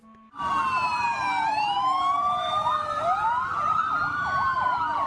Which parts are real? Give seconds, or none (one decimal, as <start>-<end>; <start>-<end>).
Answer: 0.0-0.9; 4.0-5.1